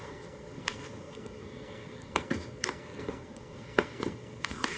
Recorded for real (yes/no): no